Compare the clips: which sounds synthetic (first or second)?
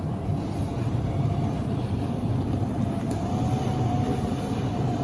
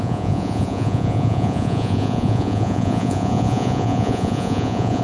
second